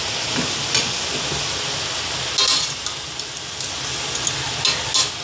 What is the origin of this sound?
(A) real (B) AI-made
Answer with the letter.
A